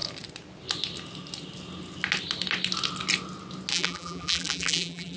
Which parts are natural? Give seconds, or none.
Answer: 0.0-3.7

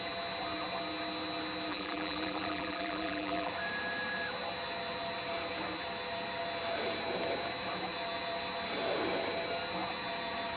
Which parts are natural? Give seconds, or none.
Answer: 0.0-1.7; 3.5-10.6

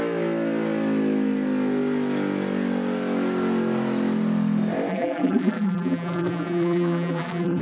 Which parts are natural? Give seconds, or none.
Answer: 0.0-4.9

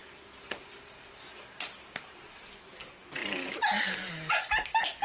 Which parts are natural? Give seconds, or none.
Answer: 2.4-3.2; 4.1-5.0